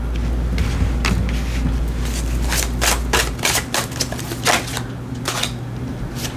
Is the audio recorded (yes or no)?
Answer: yes